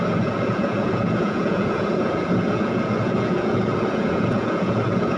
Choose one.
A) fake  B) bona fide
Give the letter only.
A